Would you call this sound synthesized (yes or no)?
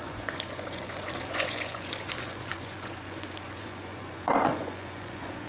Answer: yes